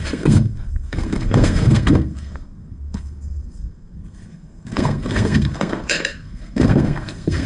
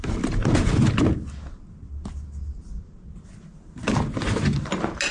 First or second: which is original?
second